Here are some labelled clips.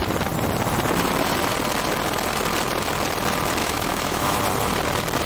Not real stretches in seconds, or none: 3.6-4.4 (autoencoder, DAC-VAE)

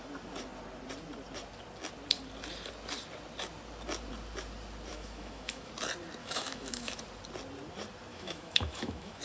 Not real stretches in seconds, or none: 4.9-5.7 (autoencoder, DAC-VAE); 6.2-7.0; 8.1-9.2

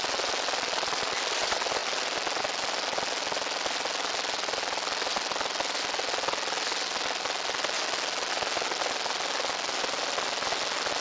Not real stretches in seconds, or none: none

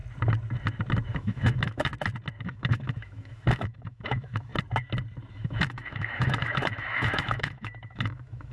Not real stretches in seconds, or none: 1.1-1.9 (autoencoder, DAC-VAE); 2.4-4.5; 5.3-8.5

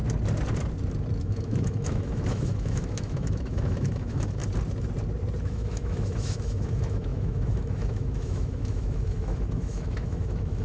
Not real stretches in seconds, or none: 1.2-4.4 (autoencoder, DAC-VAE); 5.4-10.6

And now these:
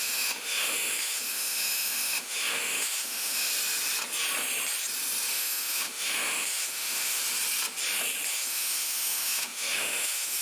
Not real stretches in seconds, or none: 0.0-3.5 (autoencoder, DAC-VAE); 5.3-7.2; 8.3-10.4